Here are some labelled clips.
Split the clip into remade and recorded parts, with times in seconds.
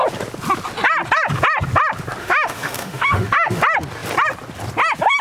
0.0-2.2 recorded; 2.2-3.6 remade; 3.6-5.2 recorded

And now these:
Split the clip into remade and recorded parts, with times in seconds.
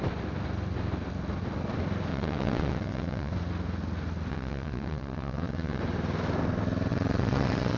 0.0-2.1 recorded; 2.1-3.3 remade; 3.3-4.3 recorded; 4.3-5.8 remade; 5.8-6.9 recorded; 6.9-7.8 remade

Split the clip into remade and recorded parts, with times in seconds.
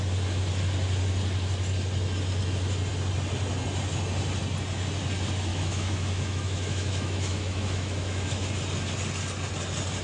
0.0-5.5 recorded; 5.5-8.5 remade; 8.5-10.0 recorded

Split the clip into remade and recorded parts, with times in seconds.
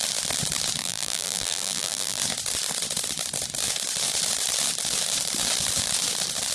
0.0-0.8 recorded; 0.8-2.2 remade; 2.2-6.5 recorded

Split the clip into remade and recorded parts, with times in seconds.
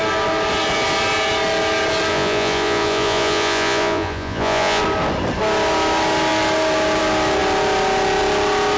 0.0-2.1 recorded; 2.1-4.8 remade; 4.8-8.8 recorded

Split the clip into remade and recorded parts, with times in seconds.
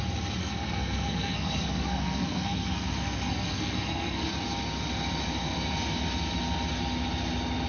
0.0-0.4 recorded; 0.4-4.3 remade; 4.3-7.7 recorded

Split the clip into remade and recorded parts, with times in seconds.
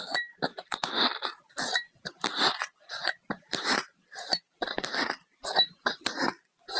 0.0-0.5 remade; 0.5-3.3 recorded; 3.3-6.8 remade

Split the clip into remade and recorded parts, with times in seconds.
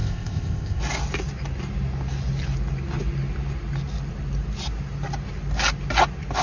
0.0-0.8 remade; 0.8-6.4 recorded